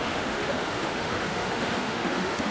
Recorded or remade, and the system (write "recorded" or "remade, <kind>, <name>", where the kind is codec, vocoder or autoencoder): remade, autoencoder, DAC-VAE